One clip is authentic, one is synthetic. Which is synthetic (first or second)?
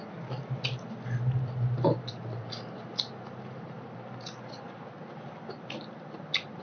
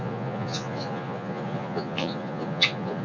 second